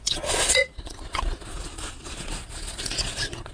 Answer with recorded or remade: remade